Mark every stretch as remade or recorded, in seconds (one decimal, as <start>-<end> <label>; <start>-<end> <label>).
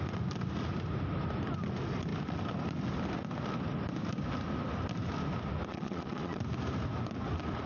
0.0-5.7 recorded; 5.7-6.4 remade; 6.4-7.7 recorded